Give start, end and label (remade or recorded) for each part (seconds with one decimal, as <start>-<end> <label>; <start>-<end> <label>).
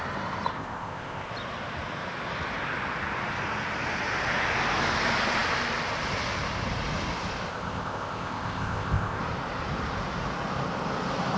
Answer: 0.0-0.5 recorded; 0.5-1.3 remade; 1.3-7.5 recorded; 7.5-9.2 remade; 9.2-11.4 recorded